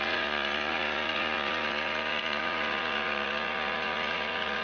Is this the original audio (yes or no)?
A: no